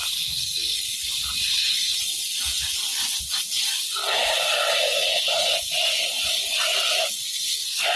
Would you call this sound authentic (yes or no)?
yes